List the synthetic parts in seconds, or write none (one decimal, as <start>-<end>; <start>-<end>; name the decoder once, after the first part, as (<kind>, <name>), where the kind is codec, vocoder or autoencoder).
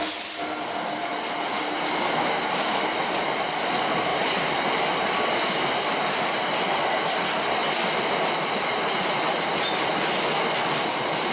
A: none